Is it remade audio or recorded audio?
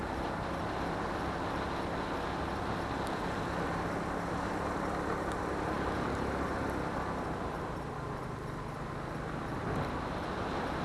recorded